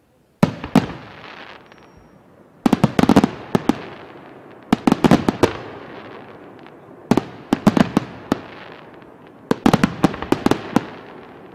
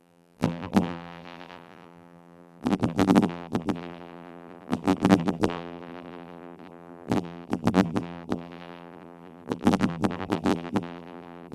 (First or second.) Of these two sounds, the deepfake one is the second